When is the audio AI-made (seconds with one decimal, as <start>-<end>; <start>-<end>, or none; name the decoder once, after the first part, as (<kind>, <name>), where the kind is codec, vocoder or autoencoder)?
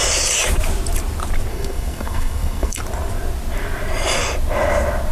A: 1.5-2.8 (codec, SNAC)